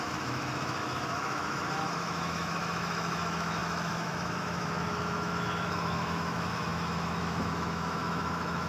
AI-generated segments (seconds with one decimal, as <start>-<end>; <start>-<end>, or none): 0.0-8.7